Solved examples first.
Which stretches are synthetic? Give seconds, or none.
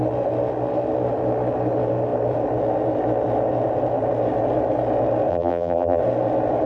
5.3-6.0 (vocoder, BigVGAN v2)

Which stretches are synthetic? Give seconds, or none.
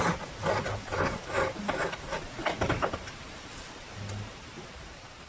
2.4-5.3 (vocoder, BigVGAN v2)